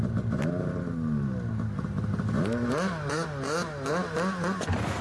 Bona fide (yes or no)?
yes